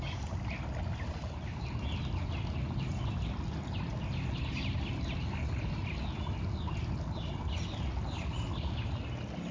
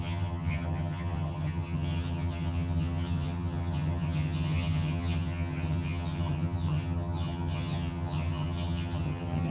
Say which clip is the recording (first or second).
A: first